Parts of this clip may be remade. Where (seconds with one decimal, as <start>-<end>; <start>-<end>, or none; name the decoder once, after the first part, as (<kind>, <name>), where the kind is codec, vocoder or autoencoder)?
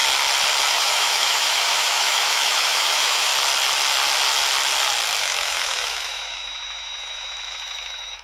0.7-3.3 (autoencoder, DAC-VAE); 5.2-8.2